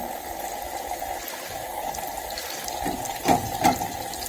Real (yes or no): yes